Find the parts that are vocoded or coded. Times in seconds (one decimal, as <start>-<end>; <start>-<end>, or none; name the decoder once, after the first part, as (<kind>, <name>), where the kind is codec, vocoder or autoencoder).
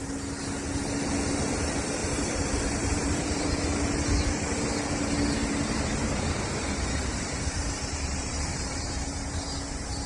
2.0-3.4 (vocoder, BigVGAN v2); 5.4-9.3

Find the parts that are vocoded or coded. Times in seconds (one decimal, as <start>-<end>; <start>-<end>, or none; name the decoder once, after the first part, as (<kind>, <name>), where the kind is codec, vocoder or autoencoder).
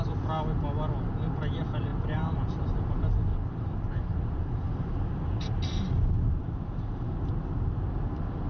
1.9-2.9 (vocoder, BigVGAN v2); 3.3-5.6; 6.4-7.3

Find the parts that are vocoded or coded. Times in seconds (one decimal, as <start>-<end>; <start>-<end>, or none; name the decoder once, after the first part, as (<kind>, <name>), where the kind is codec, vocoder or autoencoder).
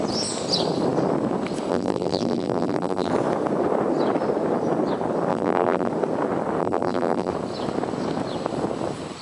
1.7-3.1 (vocoder, BigVGAN v2); 5.3-5.9; 6.6-7.3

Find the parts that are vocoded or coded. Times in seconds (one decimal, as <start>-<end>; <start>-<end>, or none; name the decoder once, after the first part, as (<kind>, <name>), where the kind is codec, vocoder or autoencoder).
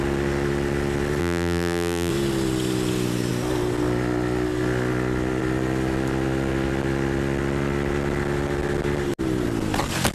1.2-2.1 (vocoder, BigVGAN v2)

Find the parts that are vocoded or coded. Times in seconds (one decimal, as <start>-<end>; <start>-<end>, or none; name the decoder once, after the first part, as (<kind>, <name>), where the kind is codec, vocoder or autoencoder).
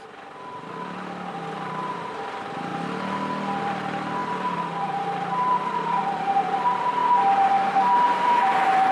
0.0-2.7 (vocoder, BigVGAN v2); 3.6-7.0; 8.4-8.9